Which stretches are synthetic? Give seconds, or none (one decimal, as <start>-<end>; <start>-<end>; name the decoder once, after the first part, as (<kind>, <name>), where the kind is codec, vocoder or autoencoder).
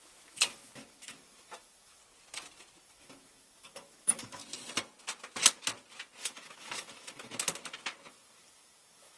0.0-2.0 (autoencoder, DAC-VAE); 2.8-4.4; 6.2-7.3; 8.1-9.2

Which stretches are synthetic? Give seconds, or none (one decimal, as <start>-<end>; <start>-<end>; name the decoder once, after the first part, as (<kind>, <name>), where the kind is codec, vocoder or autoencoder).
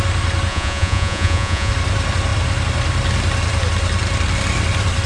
0.5-1.7 (vocoder, Vocos)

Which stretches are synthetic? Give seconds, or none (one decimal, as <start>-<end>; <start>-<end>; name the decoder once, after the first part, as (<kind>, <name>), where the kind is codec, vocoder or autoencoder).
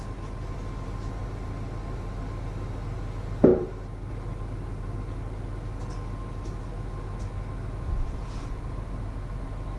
none